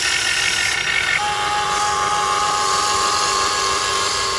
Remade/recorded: recorded